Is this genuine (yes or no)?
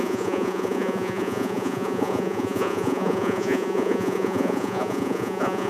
no